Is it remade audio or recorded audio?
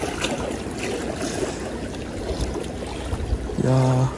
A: recorded